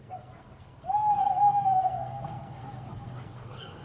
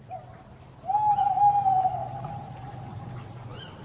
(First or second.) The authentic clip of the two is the second